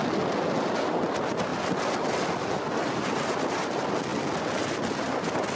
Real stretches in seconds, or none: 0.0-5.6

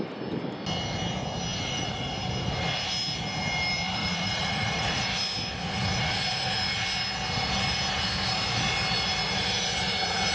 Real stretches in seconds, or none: 0.0-1.5; 2.1-4.0; 5.0-10.3

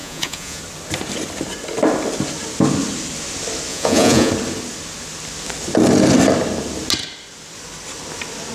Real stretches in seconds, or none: 0.6-3.7; 4.3-8.5

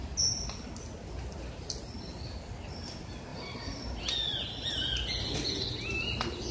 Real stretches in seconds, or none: 0.0-6.5

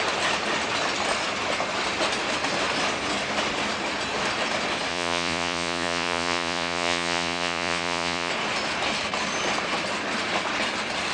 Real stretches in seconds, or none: 0.0-4.9; 8.3-11.1